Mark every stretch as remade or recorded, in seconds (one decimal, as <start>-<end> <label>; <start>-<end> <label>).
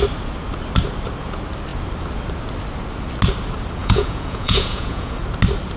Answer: 0.0-3.8 recorded; 3.8-5.2 remade; 5.2-5.8 recorded